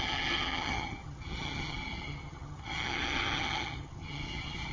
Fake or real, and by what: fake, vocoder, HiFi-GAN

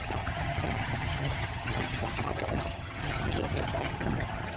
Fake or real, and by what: fake, vocoder, HiFi-GAN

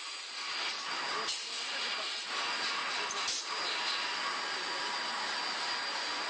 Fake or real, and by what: real